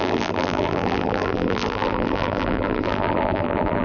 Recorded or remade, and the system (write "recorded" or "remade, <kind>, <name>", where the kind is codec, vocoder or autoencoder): remade, vocoder, BigVGAN v2